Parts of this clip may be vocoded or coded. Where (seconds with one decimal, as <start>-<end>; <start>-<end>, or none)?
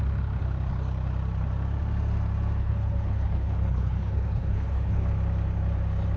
2.6-5.1